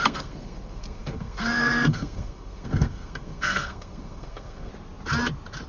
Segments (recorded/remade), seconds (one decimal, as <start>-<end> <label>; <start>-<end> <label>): 0.0-4.7 remade; 4.7-5.7 recorded